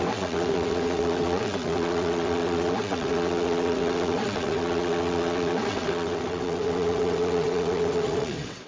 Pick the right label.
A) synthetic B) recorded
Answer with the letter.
A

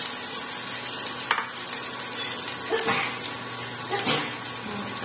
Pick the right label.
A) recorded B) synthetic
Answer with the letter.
A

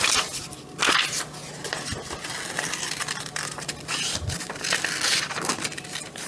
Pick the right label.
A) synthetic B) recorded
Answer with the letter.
B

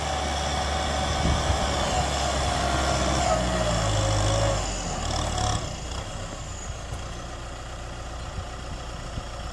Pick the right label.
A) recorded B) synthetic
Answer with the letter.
A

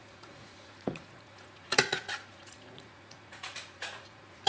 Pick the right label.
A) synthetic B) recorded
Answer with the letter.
A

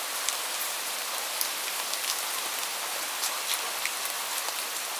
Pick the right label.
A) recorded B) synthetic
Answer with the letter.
B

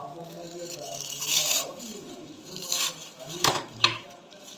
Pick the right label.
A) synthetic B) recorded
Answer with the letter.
A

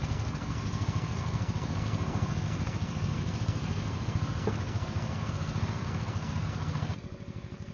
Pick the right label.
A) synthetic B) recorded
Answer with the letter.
A